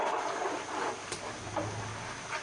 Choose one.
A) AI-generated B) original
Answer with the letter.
B